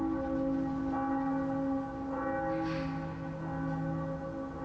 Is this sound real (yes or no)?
yes